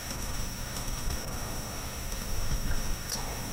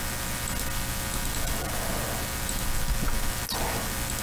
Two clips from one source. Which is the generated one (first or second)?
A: first